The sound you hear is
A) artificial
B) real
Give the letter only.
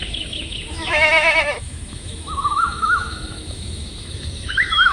A